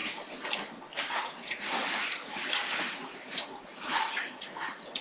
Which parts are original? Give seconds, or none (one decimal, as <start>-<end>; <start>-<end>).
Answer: 0.0-1.2